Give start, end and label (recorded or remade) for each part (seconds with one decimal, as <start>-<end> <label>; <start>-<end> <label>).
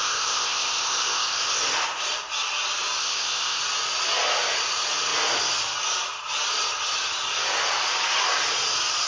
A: 0.0-1.6 remade; 1.6-3.0 recorded; 3.0-3.6 remade; 3.6-9.1 recorded